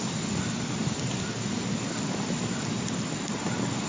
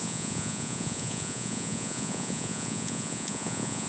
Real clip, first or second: first